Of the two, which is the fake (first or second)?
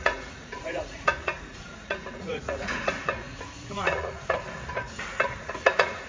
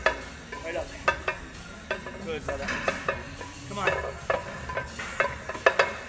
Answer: first